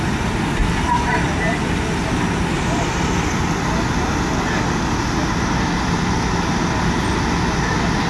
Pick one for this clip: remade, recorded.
recorded